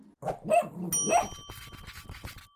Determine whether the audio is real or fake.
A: real